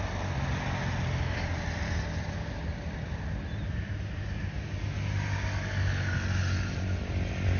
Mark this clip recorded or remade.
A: recorded